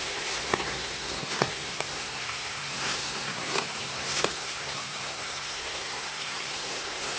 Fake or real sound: fake